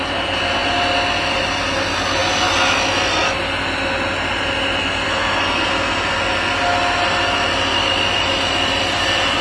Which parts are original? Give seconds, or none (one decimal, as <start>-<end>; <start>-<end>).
0.0-9.4